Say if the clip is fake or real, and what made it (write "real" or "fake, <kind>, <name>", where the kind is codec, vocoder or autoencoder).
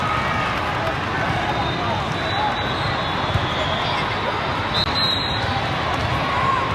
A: real